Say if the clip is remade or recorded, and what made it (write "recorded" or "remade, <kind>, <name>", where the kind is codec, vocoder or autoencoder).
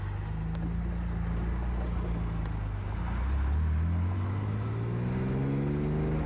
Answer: recorded